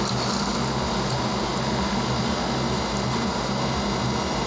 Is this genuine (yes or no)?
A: yes